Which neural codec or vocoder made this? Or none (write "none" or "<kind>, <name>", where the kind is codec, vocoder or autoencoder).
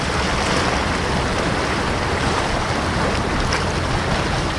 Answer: none